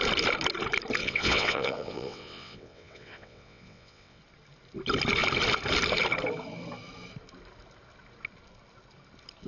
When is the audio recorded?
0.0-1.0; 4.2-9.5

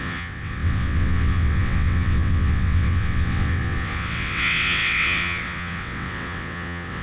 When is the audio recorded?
none